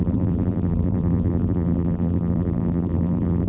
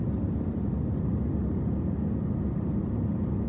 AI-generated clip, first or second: first